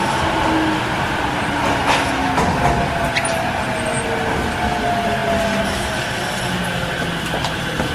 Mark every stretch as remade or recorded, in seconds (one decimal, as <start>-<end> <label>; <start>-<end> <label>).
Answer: 0.0-7.9 recorded